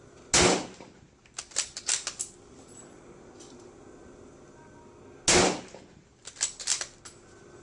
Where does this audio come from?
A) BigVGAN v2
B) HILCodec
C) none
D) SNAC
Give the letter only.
C